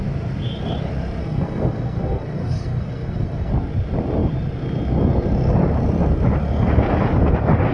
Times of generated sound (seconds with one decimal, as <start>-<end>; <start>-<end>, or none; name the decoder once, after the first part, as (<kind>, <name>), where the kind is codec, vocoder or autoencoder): 1.2-3.5 (codec, SNAC)